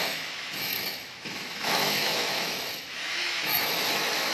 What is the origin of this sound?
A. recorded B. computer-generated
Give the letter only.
B